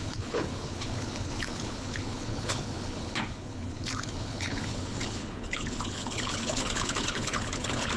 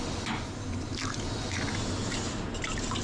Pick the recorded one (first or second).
second